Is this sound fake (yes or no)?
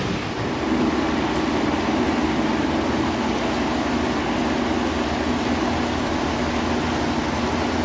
no